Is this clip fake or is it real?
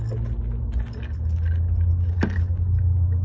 real